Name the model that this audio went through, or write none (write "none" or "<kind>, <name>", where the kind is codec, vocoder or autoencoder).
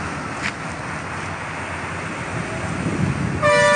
none